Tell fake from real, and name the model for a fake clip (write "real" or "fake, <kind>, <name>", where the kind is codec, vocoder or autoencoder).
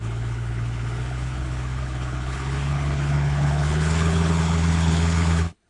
fake, codec, HILCodec